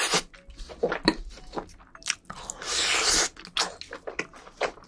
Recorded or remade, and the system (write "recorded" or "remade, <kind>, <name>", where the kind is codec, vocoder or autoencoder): recorded